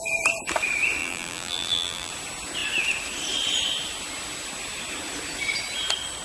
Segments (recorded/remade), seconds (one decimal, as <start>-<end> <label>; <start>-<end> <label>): 0.0-1.0 recorded; 1.0-2.1 remade; 2.1-6.2 recorded